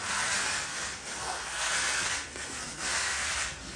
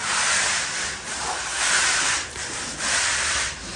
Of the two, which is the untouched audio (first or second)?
second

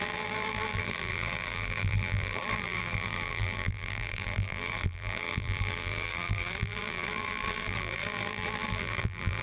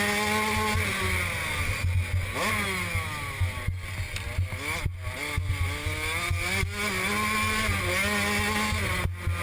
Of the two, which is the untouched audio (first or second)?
second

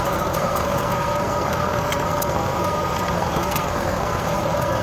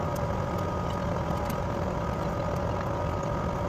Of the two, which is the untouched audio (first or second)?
second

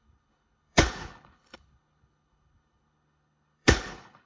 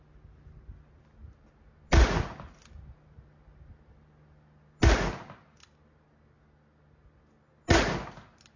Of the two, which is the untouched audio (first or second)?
second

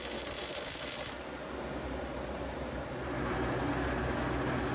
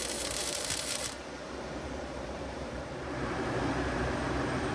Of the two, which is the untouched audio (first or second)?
first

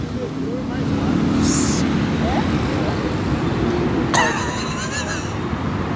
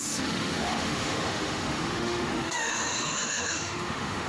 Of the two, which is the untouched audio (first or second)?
first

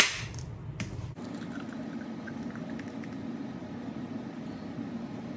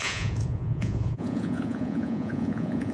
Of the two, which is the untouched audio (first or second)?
first